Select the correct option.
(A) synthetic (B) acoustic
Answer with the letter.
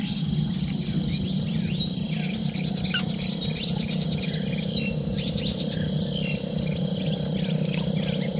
B